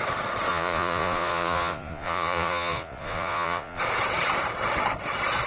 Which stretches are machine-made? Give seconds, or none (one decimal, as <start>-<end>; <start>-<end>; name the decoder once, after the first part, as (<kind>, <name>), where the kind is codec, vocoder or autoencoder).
0.5-3.8 (vocoder, Vocos)